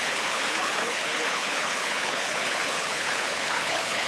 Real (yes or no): no